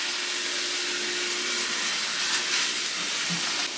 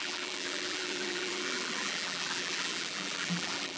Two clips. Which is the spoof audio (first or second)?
second